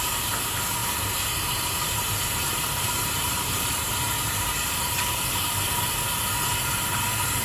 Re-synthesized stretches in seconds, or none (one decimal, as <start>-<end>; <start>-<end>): 0.8-5.2